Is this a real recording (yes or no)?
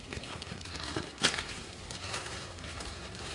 no